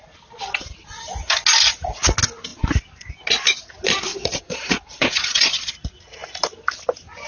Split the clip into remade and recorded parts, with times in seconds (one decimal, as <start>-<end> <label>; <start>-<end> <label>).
0.0-4.1 recorded; 4.1-5.7 remade; 5.7-7.3 recorded